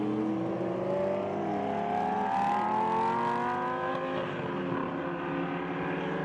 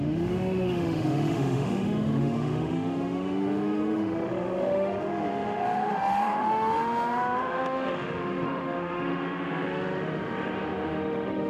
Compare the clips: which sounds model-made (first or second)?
second